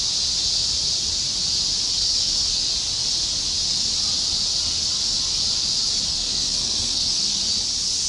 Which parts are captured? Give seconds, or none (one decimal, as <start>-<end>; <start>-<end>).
0.0-6.1; 7.4-8.1